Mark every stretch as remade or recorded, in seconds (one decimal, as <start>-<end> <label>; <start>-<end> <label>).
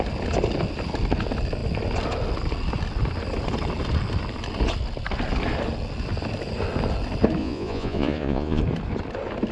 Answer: 0.0-7.4 recorded; 7.4-8.6 remade; 8.6-9.5 recorded